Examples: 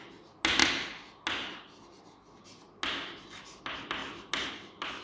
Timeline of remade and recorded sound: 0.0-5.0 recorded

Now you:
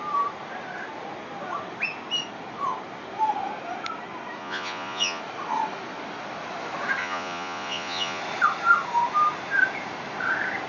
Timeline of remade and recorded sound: 0.0-4.4 recorded; 4.4-5.2 remade; 5.2-7.0 recorded; 7.0-8.2 remade; 8.2-10.7 recorded

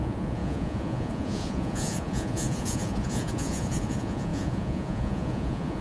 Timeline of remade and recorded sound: 0.0-5.8 remade

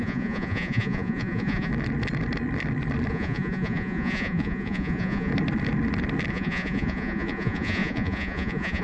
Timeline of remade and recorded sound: 0.0-1.7 remade; 1.7-3.1 recorded; 3.1-5.3 remade; 5.3-6.3 recorded; 6.3-8.8 remade